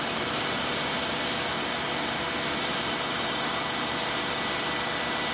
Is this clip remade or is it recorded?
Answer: recorded